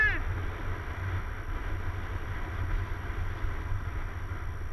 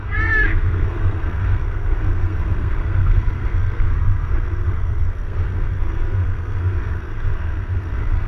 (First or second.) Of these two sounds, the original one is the first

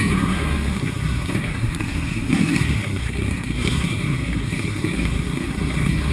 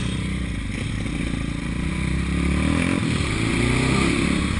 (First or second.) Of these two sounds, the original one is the second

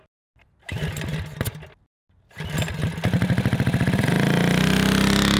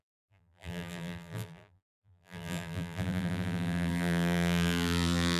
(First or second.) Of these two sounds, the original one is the first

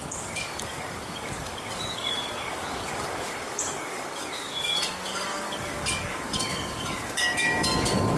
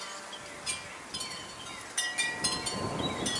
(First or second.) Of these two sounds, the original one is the second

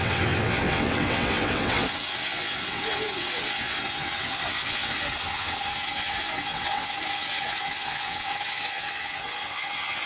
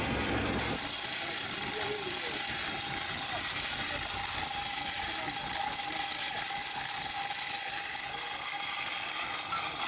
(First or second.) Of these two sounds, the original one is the second